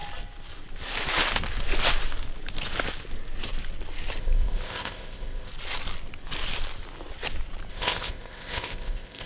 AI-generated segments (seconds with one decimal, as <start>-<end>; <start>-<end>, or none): 4.2-5.5; 7.7-9.3